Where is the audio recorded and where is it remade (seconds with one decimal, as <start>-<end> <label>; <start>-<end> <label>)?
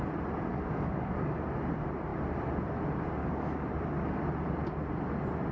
0.0-0.5 recorded; 0.5-1.4 remade; 1.4-3.2 recorded; 3.2-3.7 remade; 3.7-5.5 recorded